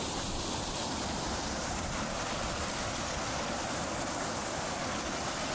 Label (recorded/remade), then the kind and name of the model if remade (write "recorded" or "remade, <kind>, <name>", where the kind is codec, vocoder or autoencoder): recorded